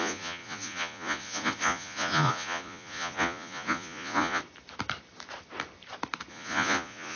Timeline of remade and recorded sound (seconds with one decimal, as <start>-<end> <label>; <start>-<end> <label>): 0.0-4.4 remade; 4.4-6.3 recorded; 6.3-7.2 remade